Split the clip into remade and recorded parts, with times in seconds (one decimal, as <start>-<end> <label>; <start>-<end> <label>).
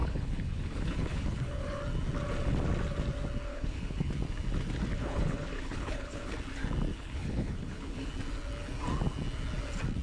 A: 0.0-1.8 remade; 1.8-3.5 recorded; 3.5-4.1 remade; 4.1-5.0 recorded; 5.0-6.3 remade; 6.3-6.9 recorded; 6.9-8.1 remade; 8.1-10.0 recorded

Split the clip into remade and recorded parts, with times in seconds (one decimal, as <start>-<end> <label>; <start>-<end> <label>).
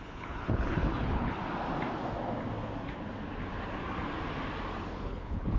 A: 0.0-1.4 remade; 1.4-4.8 recorded; 4.8-5.6 remade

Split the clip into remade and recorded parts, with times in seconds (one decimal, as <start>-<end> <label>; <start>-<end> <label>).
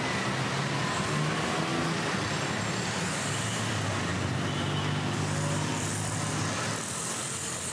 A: 0.0-7.7 recorded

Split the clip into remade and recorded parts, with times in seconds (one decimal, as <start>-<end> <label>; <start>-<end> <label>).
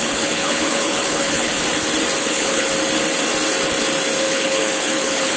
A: 0.0-1.5 remade; 1.5-2.2 recorded; 2.2-2.7 remade; 2.7-4.2 recorded; 4.2-5.4 remade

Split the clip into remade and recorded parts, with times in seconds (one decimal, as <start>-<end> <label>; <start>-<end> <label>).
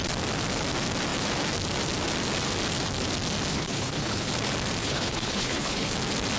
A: 0.0-3.5 recorded; 3.5-4.3 remade; 4.3-4.8 recorded; 4.8-5.9 remade; 5.9-6.4 recorded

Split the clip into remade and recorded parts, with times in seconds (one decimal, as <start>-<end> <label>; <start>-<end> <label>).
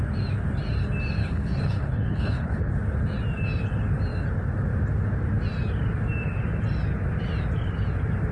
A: 0.0-1.2 recorded; 1.2-2.7 remade; 2.7-8.3 recorded